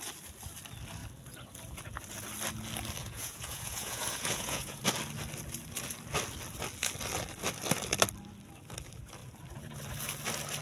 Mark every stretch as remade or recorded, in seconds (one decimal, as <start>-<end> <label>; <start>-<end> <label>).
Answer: 0.0-3.0 recorded; 3.0-4.8 remade; 4.8-10.6 recorded